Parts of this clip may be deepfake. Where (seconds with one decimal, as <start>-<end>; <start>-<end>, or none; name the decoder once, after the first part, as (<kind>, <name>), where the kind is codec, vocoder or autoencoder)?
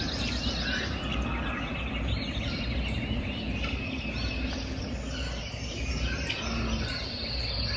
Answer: none